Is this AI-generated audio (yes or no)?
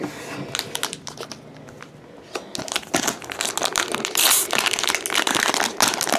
no